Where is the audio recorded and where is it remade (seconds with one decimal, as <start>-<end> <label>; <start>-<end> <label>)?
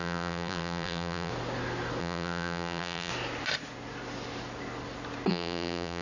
0.0-1.3 remade; 1.3-2.0 recorded; 2.0-3.1 remade; 3.1-5.3 recorded; 5.3-6.0 remade